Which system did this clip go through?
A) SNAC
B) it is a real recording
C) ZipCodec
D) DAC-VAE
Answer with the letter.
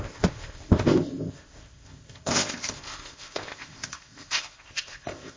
C